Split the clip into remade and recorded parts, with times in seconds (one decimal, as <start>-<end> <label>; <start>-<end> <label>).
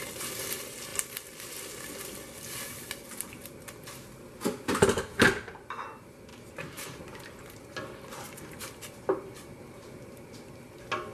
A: 0.0-6.3 recorded; 6.3-7.0 remade; 7.0-11.1 recorded